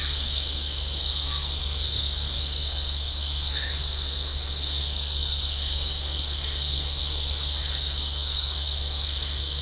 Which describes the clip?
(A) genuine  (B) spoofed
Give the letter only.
B